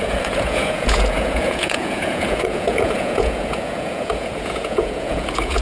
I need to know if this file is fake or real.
fake